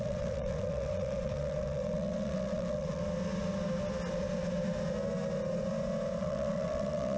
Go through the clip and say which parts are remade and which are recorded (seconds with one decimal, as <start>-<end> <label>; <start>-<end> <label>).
0.0-3.0 remade; 3.0-6.2 recorded; 6.2-7.2 remade